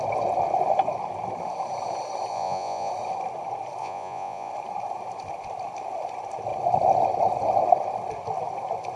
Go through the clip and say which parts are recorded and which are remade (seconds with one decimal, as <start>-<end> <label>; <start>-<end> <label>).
0.0-2.3 recorded; 2.3-2.9 remade; 2.9-3.8 recorded; 3.8-4.5 remade; 4.5-9.0 recorded